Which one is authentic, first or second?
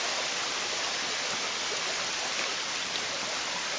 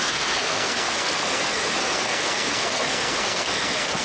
first